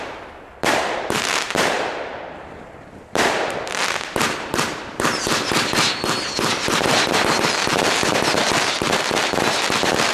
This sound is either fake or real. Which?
fake